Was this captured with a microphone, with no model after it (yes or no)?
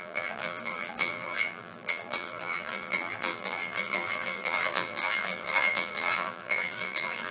no